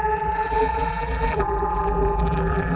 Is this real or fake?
fake